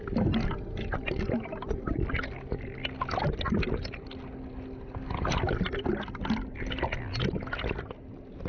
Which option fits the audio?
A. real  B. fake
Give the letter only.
A